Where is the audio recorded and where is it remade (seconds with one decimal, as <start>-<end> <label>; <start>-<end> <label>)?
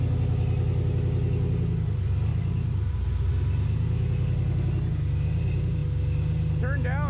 0.0-2.3 recorded; 2.3-3.3 remade; 3.3-7.1 recorded